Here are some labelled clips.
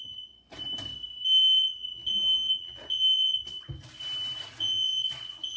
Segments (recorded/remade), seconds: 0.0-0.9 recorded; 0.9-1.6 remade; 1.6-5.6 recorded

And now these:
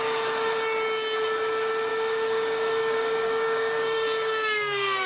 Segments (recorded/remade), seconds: 0.0-1.9 recorded; 1.9-5.1 remade

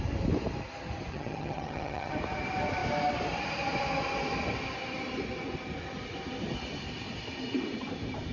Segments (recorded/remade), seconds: 0.0-1.1 recorded; 1.1-2.1 remade; 2.1-8.3 recorded

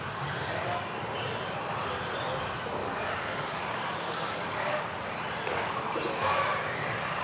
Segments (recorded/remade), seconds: 0.0-2.8 recorded; 2.8-4.8 remade; 4.8-7.2 recorded